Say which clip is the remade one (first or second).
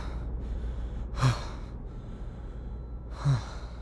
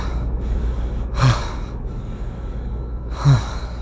second